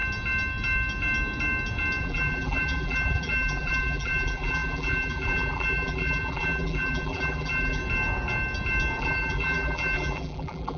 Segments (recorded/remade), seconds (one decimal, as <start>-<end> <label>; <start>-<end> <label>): 0.0-2.0 recorded; 2.0-7.8 remade; 7.8-9.0 recorded; 9.0-10.8 remade